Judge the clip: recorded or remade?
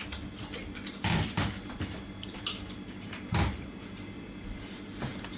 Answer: recorded